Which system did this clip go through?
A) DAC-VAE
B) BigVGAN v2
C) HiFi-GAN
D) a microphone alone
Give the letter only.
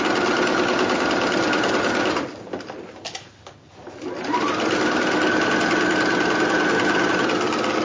D